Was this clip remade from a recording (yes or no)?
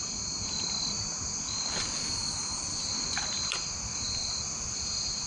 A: no